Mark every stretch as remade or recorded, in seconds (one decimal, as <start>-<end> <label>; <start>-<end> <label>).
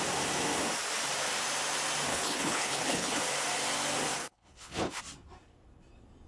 0.0-2.1 recorded; 2.1-3.2 remade; 3.2-4.2 recorded; 4.2-5.0 remade; 5.0-6.3 recorded